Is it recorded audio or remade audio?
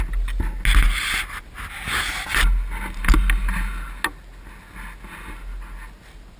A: recorded